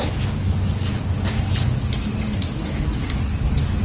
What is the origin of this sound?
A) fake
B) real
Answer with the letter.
B